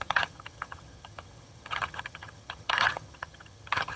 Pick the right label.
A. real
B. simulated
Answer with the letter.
B